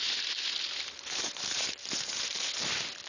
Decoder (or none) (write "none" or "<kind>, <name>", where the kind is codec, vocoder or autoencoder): vocoder, BigVGAN v2